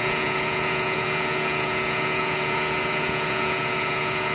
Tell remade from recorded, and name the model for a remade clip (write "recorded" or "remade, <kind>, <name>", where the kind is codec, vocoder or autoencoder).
remade, vocoder, Vocos